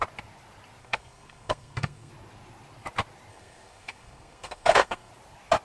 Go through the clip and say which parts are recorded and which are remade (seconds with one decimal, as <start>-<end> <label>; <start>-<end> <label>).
0.0-0.8 recorded; 0.8-2.1 remade; 2.1-3.3 recorded; 3.3-5.1 remade; 5.1-5.6 recorded